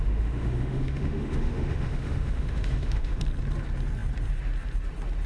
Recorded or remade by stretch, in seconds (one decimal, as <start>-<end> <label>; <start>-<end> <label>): 0.0-3.2 remade; 3.2-5.3 recorded